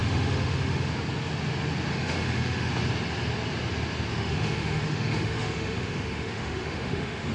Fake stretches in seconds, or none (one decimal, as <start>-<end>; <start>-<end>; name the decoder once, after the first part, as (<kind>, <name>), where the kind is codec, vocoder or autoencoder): 0.0-0.9 (autoencoder, DAC-VAE); 1.9-2.7; 4.1-7.3